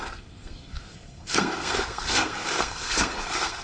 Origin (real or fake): fake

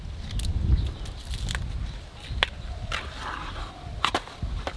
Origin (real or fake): real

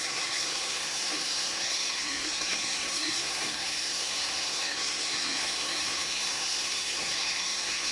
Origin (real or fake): fake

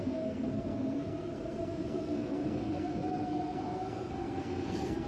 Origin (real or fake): fake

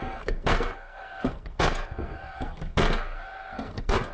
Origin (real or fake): fake